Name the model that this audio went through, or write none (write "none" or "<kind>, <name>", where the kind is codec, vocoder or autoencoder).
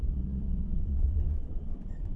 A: vocoder, Vocos